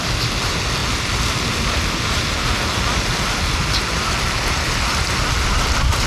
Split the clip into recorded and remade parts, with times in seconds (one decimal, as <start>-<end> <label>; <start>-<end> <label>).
0.0-6.1 recorded

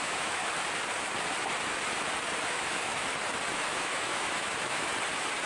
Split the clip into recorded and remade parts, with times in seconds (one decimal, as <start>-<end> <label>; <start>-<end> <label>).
0.0-0.4 remade; 0.4-2.5 recorded; 2.5-2.9 remade; 2.9-3.5 recorded; 3.5-4.9 remade; 4.9-5.5 recorded